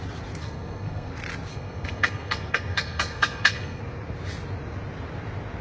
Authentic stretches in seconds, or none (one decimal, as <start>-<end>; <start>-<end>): 0.0-0.4; 1.1-1.5; 3.8-5.6